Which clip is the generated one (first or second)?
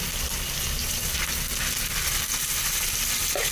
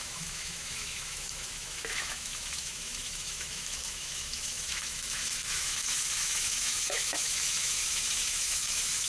second